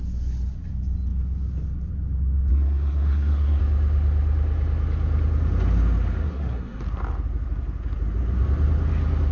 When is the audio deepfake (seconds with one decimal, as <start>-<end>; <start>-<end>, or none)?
2.5-3.6; 6.2-6.8